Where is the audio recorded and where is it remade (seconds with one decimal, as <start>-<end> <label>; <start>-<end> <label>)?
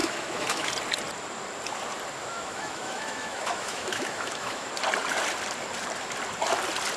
0.0-0.7 remade; 0.7-2.2 recorded; 2.2-4.7 remade; 4.7-7.0 recorded